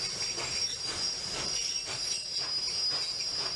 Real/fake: real